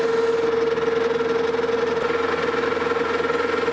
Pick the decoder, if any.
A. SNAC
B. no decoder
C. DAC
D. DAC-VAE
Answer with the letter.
B